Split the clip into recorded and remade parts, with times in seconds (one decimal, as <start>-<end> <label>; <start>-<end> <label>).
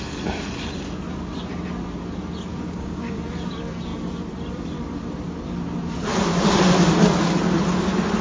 0.0-2.5 recorded; 2.5-3.2 remade; 3.2-8.2 recorded